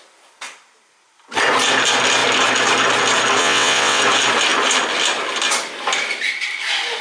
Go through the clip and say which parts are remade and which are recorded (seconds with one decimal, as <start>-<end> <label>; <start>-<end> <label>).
0.0-3.4 recorded; 3.4-4.0 remade; 4.0-7.0 recorded